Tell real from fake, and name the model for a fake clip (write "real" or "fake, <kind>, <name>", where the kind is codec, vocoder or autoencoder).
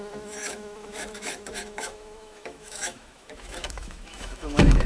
fake, autoencoder, DAC-VAE